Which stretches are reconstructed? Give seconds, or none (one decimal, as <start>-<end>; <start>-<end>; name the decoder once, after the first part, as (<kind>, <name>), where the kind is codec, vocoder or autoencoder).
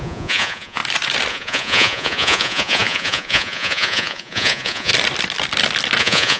0.0-0.8 (vocoder, Vocos); 1.3-4.9; 6.0-6.4